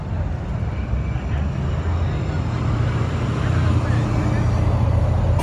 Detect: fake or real real